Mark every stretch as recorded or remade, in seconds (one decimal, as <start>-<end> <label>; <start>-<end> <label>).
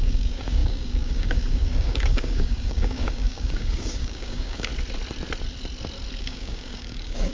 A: 0.0-4.7 remade; 4.7-6.2 recorded; 6.2-7.3 remade